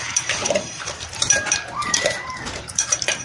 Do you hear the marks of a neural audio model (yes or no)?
yes